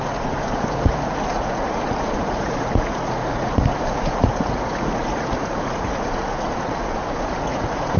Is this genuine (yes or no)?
no